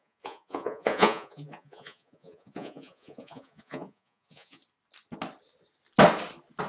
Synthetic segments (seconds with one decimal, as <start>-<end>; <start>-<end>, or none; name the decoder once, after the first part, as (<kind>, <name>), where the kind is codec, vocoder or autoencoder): 0.0-4.6 (vocoder, Vocos)